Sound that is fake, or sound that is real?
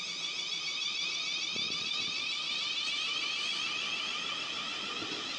real